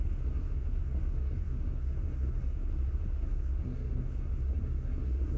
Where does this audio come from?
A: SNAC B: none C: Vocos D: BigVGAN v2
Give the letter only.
A